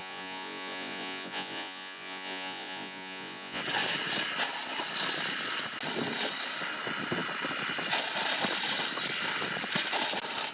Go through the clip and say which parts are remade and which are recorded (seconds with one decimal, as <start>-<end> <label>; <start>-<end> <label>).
0.0-3.6 remade; 3.6-10.5 recorded